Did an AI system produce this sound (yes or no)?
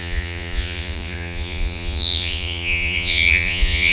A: yes